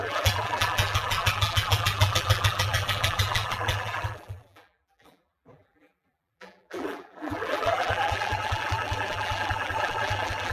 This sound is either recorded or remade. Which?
remade